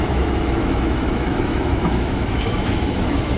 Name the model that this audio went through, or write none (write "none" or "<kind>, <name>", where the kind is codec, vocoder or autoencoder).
autoencoder, DAC-VAE